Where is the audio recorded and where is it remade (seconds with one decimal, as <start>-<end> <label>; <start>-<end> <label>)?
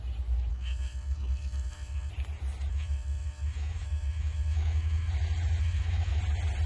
0.0-0.5 recorded; 0.5-2.1 remade; 2.1-2.7 recorded; 2.7-5.1 remade; 5.1-5.6 recorded; 5.6-6.2 remade; 6.2-6.7 recorded